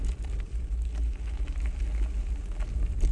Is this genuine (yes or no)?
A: yes